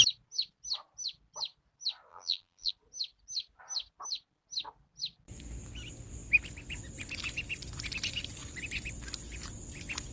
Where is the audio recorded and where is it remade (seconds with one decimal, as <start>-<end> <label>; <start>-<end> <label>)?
0.0-2.1 recorded; 2.1-2.7 remade; 2.7-10.1 recorded